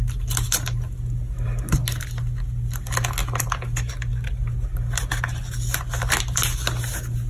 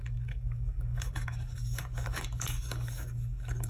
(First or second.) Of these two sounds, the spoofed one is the second